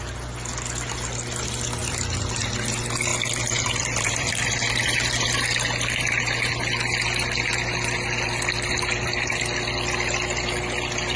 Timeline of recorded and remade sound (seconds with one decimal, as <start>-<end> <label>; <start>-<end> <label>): 0.0-1.8 recorded; 1.8-2.3 remade; 2.3-3.1 recorded; 3.1-4.7 remade; 4.7-11.2 recorded